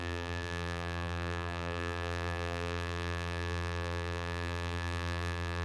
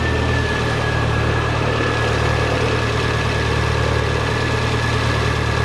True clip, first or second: second